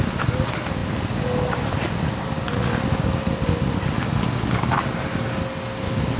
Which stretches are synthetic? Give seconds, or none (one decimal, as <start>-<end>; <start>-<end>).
none